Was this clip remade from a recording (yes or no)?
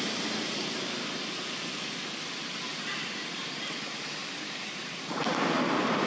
no